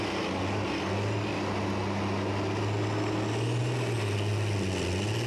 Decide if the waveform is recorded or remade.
recorded